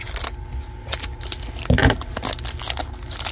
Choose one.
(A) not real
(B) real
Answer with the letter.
B